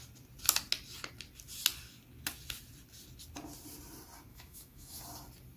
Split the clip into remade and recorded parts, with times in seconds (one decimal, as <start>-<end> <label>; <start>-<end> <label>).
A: 0.0-4.3 recorded; 4.3-5.0 remade; 5.0-5.6 recorded

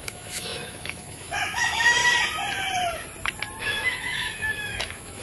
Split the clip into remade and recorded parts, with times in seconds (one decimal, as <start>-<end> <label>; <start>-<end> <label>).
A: 0.0-2.0 remade; 2.0-3.6 recorded; 3.6-5.2 remade

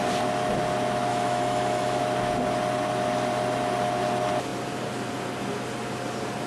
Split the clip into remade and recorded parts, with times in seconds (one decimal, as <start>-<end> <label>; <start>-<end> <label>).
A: 0.0-1.1 recorded; 1.1-2.0 remade; 2.0-6.5 recorded

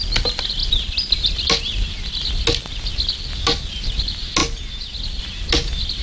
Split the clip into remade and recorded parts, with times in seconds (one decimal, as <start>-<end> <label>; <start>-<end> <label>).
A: 0.0-6.0 recorded

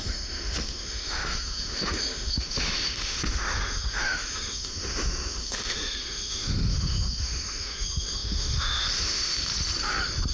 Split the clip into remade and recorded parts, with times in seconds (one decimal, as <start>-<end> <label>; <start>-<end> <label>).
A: 0.0-9.5 remade; 9.5-10.3 recorded

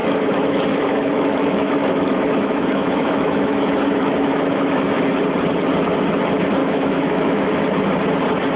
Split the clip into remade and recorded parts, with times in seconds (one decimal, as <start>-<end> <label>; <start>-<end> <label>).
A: 0.0-5.0 remade; 5.0-6.6 recorded; 6.6-7.6 remade; 7.6-8.6 recorded

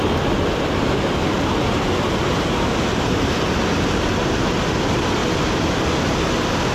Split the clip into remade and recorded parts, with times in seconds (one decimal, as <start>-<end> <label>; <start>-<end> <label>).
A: 0.0-6.7 recorded

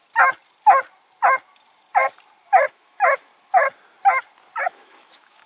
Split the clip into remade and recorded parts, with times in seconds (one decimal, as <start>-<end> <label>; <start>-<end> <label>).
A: 0.0-2.7 recorded; 2.7-3.3 remade; 3.3-4.6 recorded; 4.6-5.5 remade